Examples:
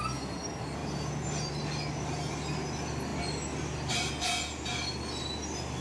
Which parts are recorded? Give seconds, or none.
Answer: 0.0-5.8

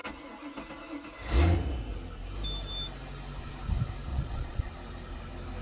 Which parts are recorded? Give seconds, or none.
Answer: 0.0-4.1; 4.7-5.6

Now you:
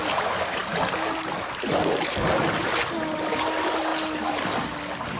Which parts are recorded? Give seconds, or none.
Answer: 0.0-5.2

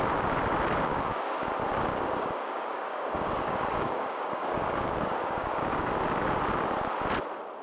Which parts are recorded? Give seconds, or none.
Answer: 0.0-0.9; 1.5-1.9; 5.9-7.6

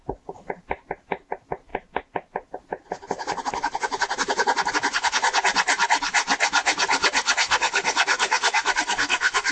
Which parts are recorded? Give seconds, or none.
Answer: 0.0-7.4

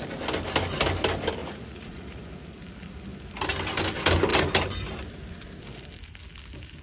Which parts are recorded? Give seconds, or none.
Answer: 0.0-1.4; 2.2-6.8